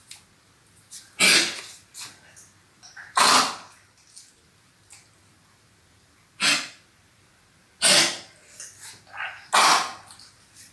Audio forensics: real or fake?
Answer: real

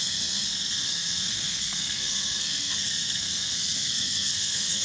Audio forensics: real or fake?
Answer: fake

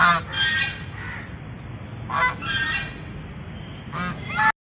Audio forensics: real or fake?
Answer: real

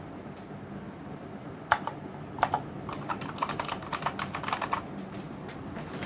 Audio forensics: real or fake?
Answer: real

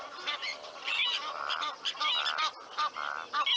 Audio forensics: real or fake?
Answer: fake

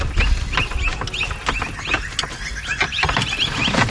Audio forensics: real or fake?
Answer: real